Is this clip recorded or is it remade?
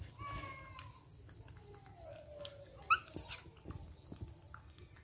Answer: recorded